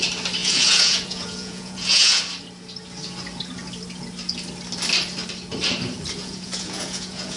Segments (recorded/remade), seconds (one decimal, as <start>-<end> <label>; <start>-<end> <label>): 0.0-0.4 recorded; 0.4-2.2 remade; 2.2-6.2 recorded; 6.2-7.4 remade